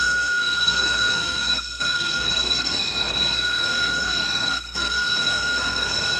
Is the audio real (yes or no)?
no